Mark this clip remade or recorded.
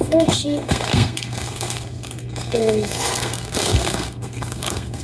remade